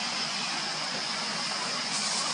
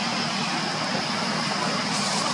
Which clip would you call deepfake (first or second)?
first